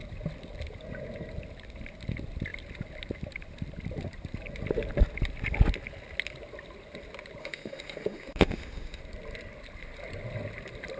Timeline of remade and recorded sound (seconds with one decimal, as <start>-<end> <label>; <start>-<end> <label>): 0.0-7.4 recorded; 7.4-9.0 remade; 9.0-11.0 recorded